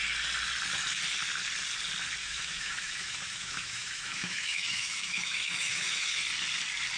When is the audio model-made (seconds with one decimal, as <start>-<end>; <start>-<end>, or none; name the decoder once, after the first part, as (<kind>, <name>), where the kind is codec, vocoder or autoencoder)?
2.2-6.2 (autoencoder, DAC-VAE)